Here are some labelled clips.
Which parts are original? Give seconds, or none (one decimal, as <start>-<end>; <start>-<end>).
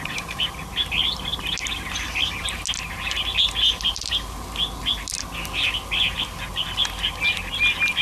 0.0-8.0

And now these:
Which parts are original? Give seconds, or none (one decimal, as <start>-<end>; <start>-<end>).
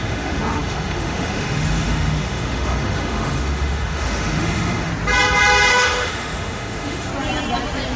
4.9-5.7; 7.1-8.0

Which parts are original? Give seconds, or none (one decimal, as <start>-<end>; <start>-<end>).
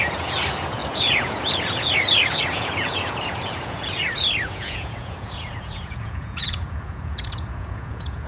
none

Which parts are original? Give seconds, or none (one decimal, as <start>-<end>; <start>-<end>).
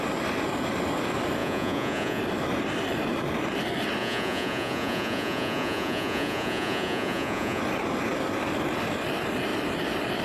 0.0-1.4; 2.2-4.0; 7.6-10.2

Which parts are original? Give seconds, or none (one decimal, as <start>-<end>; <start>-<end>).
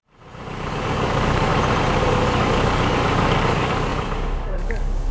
0.0-0.7; 1.5-2.0